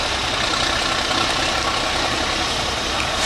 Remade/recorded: recorded